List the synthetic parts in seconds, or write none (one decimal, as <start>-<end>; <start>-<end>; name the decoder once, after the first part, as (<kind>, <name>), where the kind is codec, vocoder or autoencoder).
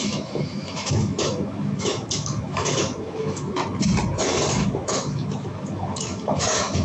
0.0-3.6 (autoencoder, DAC-VAE); 4.5-6.8